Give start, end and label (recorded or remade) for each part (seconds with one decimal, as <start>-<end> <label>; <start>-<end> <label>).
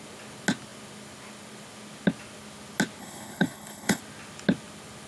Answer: 0.0-3.0 recorded; 3.0-4.0 remade; 4.0-5.1 recorded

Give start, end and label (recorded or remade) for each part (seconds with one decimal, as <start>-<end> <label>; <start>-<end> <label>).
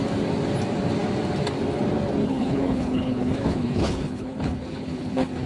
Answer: 0.0-2.2 recorded; 2.2-5.5 remade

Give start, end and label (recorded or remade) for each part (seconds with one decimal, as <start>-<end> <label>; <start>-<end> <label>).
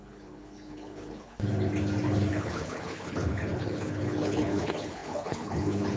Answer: 0.0-1.5 remade; 1.5-2.3 recorded; 2.3-6.0 remade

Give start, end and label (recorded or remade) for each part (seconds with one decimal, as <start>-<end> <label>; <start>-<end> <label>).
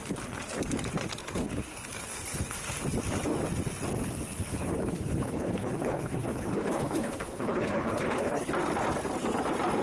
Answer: 0.0-1.2 recorded; 1.2-2.8 remade; 2.8-4.5 recorded; 4.5-8.5 remade; 8.5-9.8 recorded